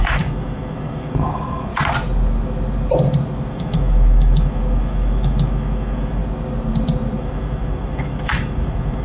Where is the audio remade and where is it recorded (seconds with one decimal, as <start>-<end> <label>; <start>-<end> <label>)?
0.0-1.7 remade; 1.7-3.5 recorded; 3.5-6.2 remade; 6.2-7.2 recorded; 7.2-9.0 remade